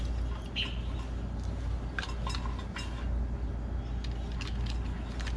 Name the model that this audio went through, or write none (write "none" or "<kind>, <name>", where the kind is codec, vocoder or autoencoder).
none